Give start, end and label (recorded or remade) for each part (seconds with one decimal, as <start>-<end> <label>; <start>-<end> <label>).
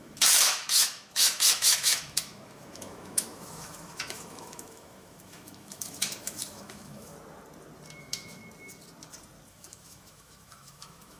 0.0-7.1 remade; 7.1-8.0 recorded; 8.0-8.4 remade; 8.4-9.5 recorded; 9.5-11.2 remade